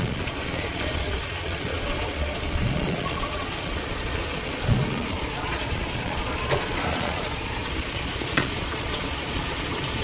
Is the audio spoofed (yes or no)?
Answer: yes